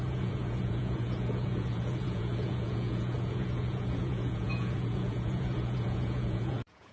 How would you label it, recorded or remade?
remade